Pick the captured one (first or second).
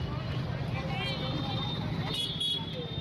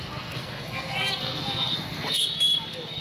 first